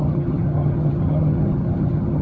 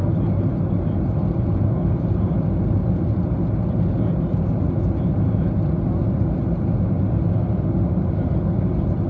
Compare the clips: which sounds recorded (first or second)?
second